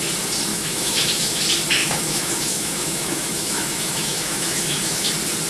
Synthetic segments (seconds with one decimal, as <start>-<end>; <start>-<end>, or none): 0.5-1.4; 1.8-5.1